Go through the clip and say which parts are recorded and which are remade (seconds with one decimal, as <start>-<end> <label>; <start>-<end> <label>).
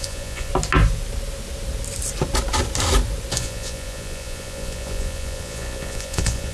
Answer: 0.0-0.5 remade; 0.5-3.3 recorded; 3.3-6.5 remade